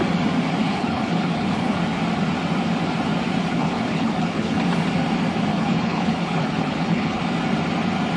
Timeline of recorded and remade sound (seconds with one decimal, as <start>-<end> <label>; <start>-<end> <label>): 0.0-0.6 recorded; 0.6-1.8 remade; 1.8-3.4 recorded; 3.4-4.6 remade; 4.6-5.5 recorded; 5.5-7.2 remade; 7.2-8.2 recorded